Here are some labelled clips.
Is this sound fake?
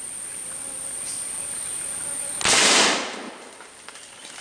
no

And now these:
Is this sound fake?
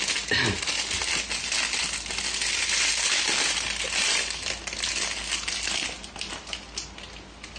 no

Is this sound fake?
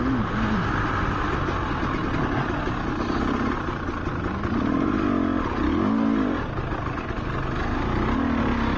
no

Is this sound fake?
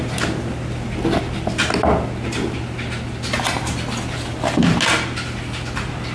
no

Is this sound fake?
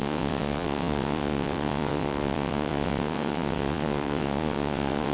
yes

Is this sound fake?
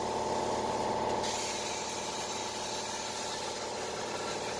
no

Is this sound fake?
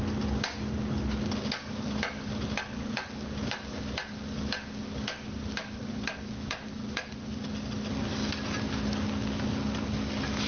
no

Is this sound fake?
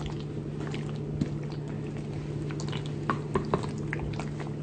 no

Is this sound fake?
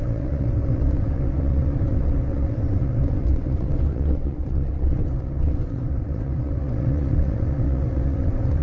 yes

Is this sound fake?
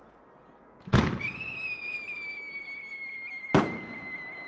no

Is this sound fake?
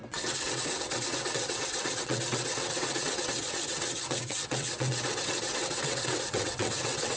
yes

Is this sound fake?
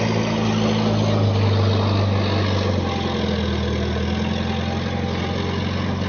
no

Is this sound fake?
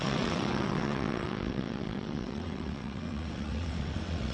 yes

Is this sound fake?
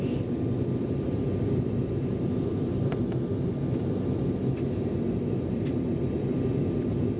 no